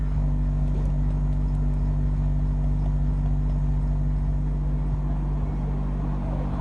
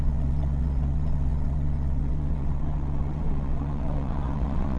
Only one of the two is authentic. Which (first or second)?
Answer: first